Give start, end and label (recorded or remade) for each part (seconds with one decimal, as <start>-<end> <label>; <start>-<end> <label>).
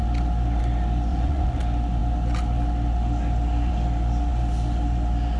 0.0-1.1 recorded; 1.1-1.6 remade; 1.6-5.4 recorded